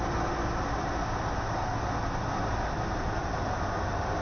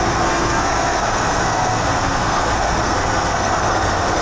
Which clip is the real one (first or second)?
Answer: first